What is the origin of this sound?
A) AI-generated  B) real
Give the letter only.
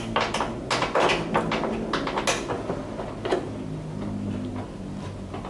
B